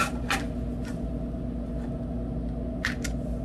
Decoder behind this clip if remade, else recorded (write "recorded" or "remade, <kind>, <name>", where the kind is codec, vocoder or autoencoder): recorded